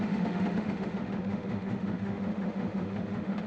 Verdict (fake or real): fake